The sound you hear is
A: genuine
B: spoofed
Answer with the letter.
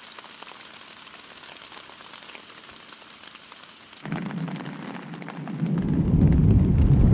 A